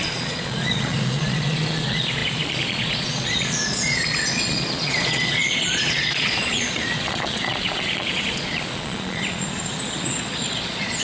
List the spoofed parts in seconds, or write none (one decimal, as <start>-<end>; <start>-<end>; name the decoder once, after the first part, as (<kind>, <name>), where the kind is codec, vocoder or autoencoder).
0.0-11.0 (vocoder, Vocos)